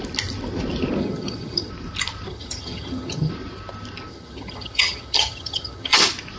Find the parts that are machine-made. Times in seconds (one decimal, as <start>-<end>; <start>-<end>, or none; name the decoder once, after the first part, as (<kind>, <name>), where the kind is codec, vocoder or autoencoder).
1.0-1.7 (vocoder, HiFi-GAN); 2.3-3.3; 4.1-6.0